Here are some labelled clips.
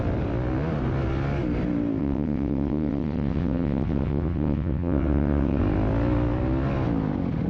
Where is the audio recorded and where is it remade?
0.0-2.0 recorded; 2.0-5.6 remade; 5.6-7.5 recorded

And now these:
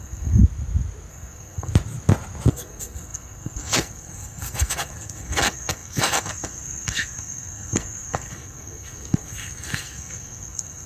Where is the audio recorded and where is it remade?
0.0-0.4 remade; 0.4-1.1 recorded; 1.1-1.7 remade; 1.7-2.5 recorded; 2.5-10.9 remade

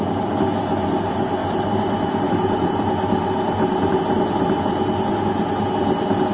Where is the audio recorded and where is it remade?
0.0-6.3 recorded

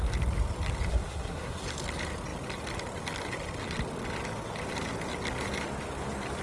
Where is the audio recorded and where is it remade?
0.0-0.9 recorded; 0.9-1.6 remade; 1.6-6.4 recorded

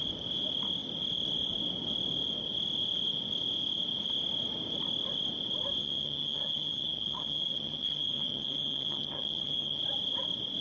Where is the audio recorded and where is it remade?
0.0-5.8 recorded; 5.8-9.8 remade; 9.8-10.6 recorded

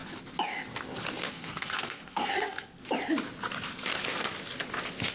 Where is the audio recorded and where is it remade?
0.0-1.3 recorded; 1.3-2.8 remade; 2.8-5.1 recorded

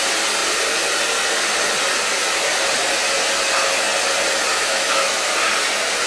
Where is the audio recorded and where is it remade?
0.0-4.5 recorded; 4.5-5.3 remade; 5.3-6.1 recorded

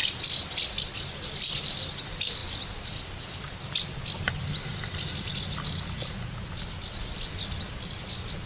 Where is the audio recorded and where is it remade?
0.0-8.5 recorded